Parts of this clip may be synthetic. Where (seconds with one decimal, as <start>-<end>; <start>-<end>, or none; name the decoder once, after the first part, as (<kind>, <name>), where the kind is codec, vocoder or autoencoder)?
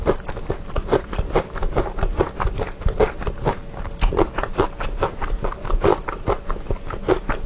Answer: none